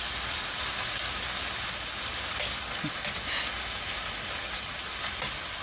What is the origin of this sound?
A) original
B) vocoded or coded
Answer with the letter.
A